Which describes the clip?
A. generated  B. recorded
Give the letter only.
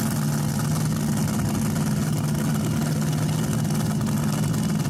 B